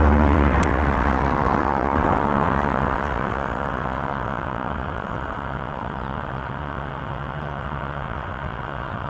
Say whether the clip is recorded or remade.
remade